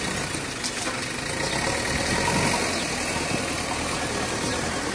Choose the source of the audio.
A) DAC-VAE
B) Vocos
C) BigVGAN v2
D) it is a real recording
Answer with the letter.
D